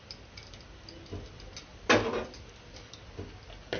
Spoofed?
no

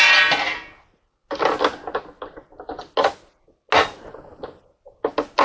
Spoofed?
no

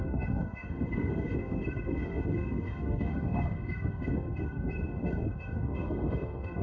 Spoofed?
yes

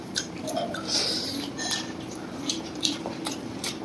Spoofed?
yes